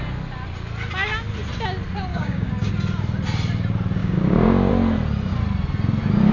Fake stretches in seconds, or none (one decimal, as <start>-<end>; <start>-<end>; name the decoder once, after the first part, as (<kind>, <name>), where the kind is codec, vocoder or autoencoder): 2.1-2.7 (codec, DAC); 4.0-4.7